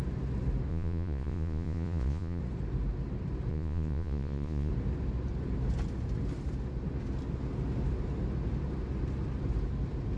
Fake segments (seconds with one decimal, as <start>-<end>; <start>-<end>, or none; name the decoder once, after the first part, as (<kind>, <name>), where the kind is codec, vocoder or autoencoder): 0.7-2.4 (vocoder, Vocos); 3.5-4.7